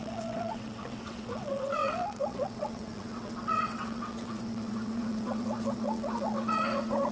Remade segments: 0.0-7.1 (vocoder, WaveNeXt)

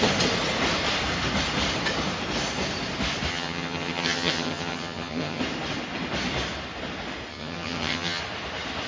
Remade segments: 3.3-5.4 (vocoder, HiFi-GAN); 7.3-8.2

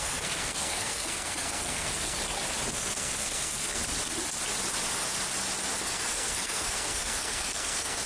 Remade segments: 0.0-2.2 (codec, SNAC); 2.7-3.8; 5.8-8.1

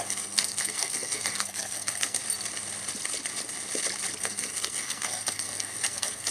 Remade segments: 0.0-2.2 (codec, SNAC); 4.2-6.3

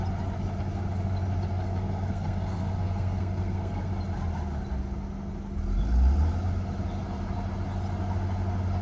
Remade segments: 1.5-3.9 (codec, SNAC)

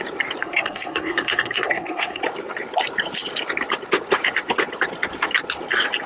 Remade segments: 0.4-2.2 (codec, SNAC)

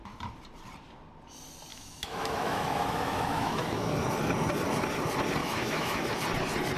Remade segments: 1.7-3.9 (autoencoder, DAC-VAE); 5.4-6.1

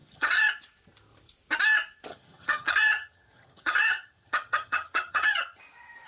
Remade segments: 0.0-0.5 (vocoder, HiFi-GAN); 2.1-5.6